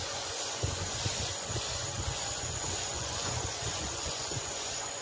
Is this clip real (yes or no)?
no